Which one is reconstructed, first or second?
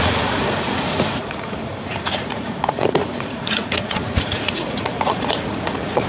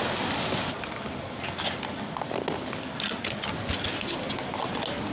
first